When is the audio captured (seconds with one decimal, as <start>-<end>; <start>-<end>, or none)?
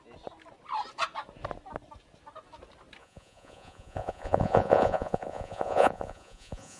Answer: 0.0-3.0